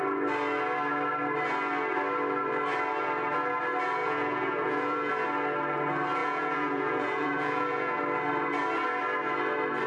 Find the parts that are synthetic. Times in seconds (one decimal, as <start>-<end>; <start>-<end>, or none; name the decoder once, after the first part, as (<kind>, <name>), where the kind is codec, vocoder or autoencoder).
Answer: 4.0-5.1 (vocoder, Vocos); 6.2-8.0